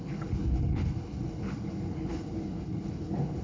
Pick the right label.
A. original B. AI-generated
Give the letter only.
B